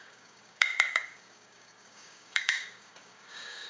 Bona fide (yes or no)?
no